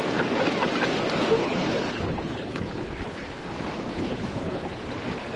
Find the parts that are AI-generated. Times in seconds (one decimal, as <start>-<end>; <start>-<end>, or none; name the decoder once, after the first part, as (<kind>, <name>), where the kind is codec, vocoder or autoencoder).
1.4-3.5 (codec, HILCodec); 3.9-5.4